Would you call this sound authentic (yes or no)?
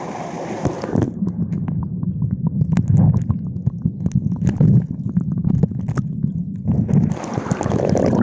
yes